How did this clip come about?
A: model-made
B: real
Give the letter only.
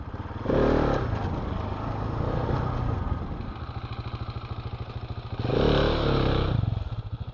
B